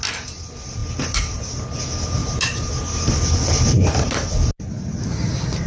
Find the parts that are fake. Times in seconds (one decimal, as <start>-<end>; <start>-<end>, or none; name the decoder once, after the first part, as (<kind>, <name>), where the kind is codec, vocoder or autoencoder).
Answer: 2.2-2.7 (vocoder, BigVGAN v2)